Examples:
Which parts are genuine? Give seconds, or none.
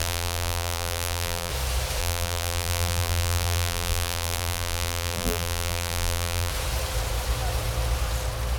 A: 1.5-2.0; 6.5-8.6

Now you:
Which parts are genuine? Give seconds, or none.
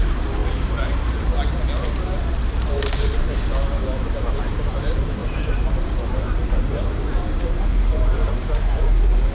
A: 0.4-2.3; 3.5-4.2; 5.2-5.8; 6.4-7.2